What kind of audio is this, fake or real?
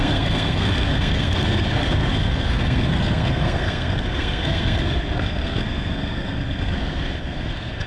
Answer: fake